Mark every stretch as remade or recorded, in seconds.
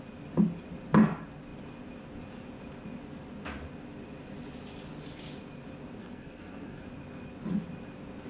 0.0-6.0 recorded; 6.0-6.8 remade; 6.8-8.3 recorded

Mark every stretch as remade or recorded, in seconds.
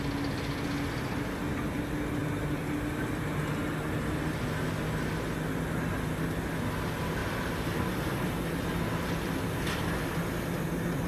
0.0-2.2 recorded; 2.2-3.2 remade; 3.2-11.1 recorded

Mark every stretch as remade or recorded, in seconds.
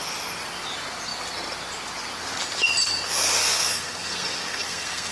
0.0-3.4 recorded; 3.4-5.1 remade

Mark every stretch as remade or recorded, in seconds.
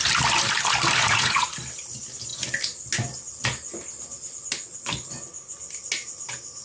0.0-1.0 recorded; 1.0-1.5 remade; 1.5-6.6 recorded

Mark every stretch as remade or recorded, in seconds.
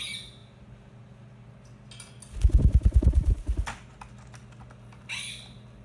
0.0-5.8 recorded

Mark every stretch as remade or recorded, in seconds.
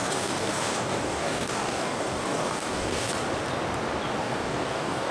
0.0-3.1 remade; 3.1-4.2 recorded; 4.2-5.1 remade